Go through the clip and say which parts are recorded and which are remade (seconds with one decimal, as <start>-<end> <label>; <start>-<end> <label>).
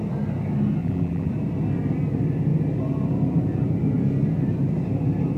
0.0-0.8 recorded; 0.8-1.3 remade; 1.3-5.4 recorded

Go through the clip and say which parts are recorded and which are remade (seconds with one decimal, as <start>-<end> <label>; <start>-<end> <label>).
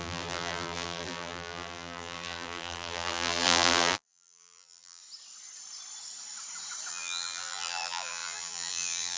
0.0-5.0 remade; 5.0-6.9 recorded; 6.9-9.2 remade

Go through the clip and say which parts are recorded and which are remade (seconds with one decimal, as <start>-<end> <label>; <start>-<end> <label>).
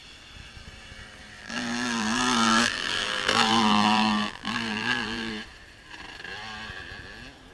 0.0-1.4 recorded; 1.4-5.3 remade; 5.3-7.5 recorded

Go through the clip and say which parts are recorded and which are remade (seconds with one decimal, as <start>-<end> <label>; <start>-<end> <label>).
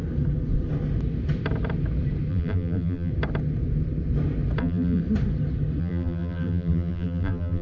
0.0-2.3 recorded; 2.3-3.1 remade; 3.1-4.6 recorded; 4.6-5.0 remade; 5.0-5.8 recorded; 5.8-7.6 remade